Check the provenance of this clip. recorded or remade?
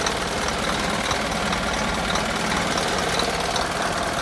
recorded